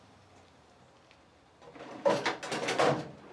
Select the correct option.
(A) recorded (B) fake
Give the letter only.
A